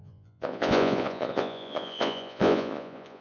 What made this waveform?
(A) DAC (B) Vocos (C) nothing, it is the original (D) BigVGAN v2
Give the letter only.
B